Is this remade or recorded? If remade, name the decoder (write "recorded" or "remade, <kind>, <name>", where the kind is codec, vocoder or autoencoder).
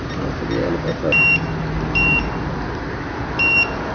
recorded